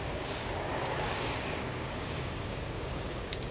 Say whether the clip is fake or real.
fake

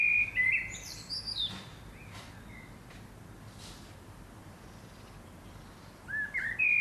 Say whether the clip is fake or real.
real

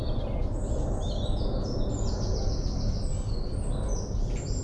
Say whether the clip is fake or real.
real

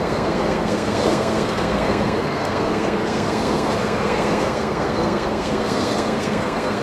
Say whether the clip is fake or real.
fake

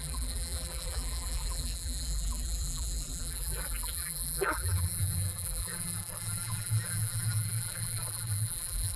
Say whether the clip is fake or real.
fake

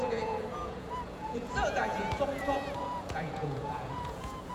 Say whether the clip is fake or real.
fake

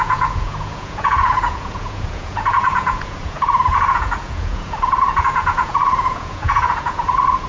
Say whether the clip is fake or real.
fake